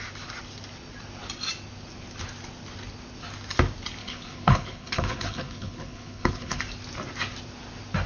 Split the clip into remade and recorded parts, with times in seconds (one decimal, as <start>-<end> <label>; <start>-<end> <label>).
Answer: 0.0-4.0 recorded; 4.0-6.6 remade; 6.6-8.1 recorded